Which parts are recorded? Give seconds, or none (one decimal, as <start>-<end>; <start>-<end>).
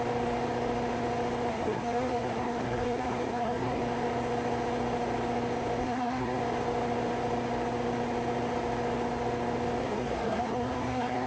0.0-1.5; 3.8-5.8; 6.4-9.8